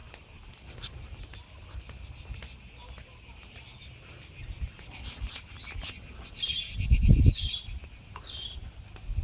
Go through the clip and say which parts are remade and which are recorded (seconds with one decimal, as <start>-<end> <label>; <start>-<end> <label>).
0.0-9.2 recorded

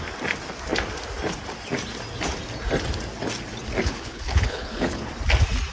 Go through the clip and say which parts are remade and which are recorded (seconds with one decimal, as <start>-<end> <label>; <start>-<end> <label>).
0.0-3.8 recorded; 3.8-5.1 remade; 5.1-5.7 recorded